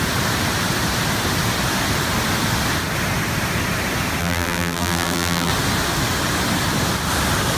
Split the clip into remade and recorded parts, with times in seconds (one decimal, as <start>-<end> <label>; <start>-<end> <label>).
0.0-4.2 recorded; 4.2-5.5 remade; 5.5-7.6 recorded